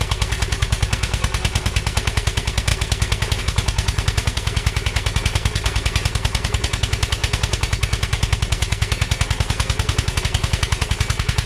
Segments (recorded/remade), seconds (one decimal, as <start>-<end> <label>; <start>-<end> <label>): 0.0-11.5 remade